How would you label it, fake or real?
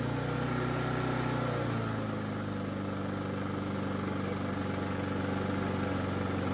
real